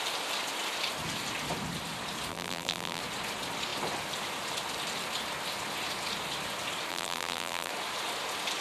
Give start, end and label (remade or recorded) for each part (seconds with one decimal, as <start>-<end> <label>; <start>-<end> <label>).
0.0-2.3 recorded; 2.3-3.0 remade; 3.0-6.9 recorded; 6.9-7.7 remade; 7.7-8.6 recorded